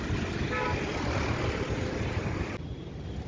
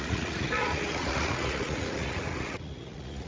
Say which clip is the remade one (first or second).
second